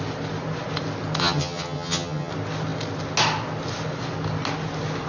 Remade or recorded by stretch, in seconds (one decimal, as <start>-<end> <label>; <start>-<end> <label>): 0.0-1.2 recorded; 1.2-2.3 remade; 2.3-5.1 recorded